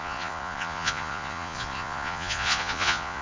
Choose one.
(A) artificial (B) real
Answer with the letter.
A